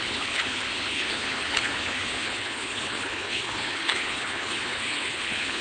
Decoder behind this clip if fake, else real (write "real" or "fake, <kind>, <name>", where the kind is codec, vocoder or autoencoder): fake, codec, HILCodec